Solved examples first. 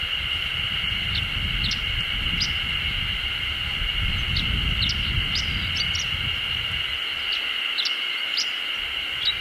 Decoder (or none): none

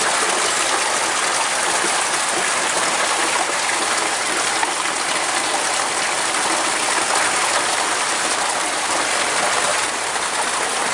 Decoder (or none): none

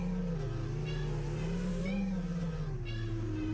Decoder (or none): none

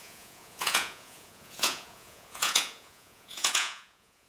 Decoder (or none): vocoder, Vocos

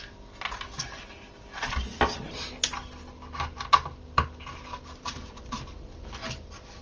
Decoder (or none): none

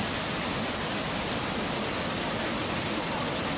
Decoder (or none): none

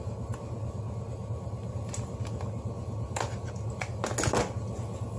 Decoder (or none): none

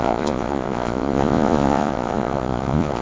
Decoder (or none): vocoder, Vocos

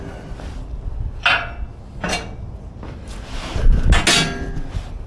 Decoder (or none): none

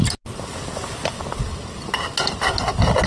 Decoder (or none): none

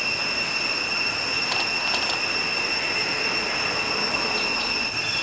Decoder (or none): none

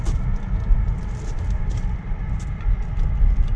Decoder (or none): none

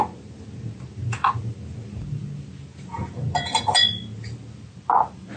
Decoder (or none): none